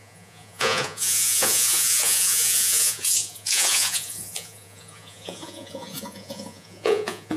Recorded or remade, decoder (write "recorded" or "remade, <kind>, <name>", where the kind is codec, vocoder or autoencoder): remade, vocoder, Vocos